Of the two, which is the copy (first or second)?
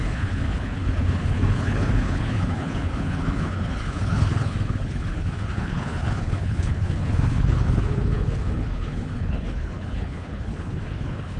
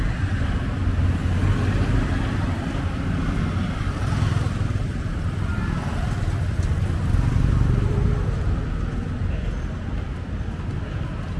first